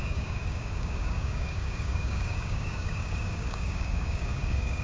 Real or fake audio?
fake